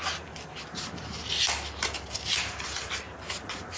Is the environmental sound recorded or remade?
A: recorded